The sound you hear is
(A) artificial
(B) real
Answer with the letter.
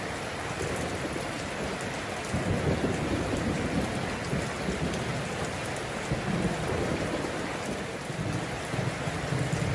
B